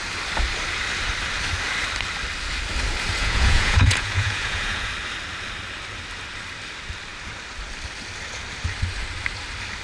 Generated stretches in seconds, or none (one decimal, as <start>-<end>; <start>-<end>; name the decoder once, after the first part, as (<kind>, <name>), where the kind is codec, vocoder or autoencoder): 3.2-4.9 (vocoder, Vocos)